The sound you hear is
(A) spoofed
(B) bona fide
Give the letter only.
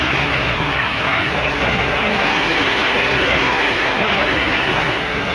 A